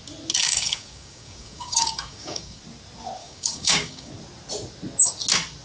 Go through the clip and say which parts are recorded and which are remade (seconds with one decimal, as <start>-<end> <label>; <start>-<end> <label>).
0.0-0.4 recorded; 0.4-2.6 remade; 2.6-3.2 recorded; 3.2-4.1 remade; 4.1-5.6 recorded